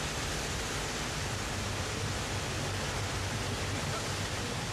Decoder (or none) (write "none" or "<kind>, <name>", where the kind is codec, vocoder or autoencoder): none